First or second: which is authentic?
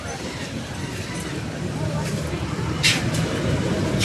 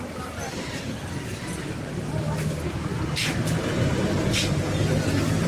second